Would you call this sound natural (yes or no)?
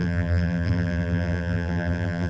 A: no